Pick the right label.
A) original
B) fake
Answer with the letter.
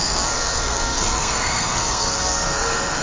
B